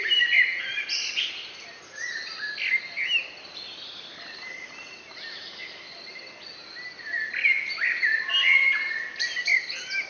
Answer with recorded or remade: recorded